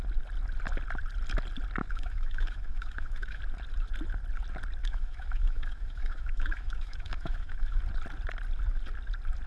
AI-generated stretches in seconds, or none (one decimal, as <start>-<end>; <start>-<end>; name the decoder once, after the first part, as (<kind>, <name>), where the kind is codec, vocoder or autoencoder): 1.8-3.4 (autoencoder, DAC-VAE); 4.8-7.8